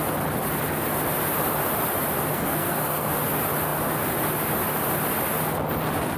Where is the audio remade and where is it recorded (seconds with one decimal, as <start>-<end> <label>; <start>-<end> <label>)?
0.0-2.3 recorded; 2.3-3.1 remade; 3.1-6.2 recorded